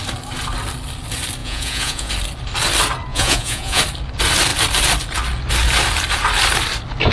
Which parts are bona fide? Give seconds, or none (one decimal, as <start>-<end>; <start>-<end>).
0.0-1.4; 2.1-3.1; 3.8-7.1